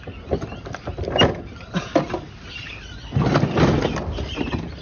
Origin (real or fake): real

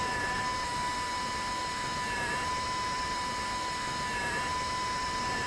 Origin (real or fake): real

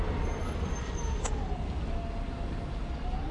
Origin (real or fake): real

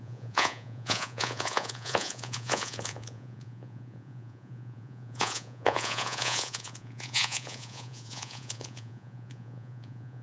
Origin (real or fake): fake